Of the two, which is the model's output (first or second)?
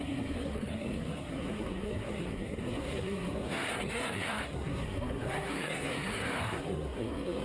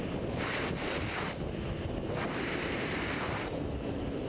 first